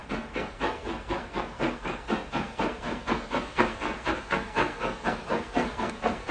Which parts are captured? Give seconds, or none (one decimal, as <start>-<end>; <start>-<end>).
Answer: none